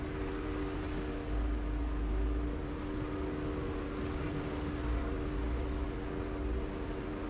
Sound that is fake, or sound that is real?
real